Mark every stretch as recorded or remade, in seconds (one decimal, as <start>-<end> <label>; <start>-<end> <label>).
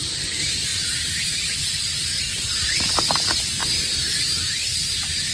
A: 0.0-3.6 remade; 3.6-5.3 recorded